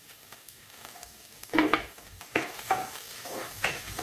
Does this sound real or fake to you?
fake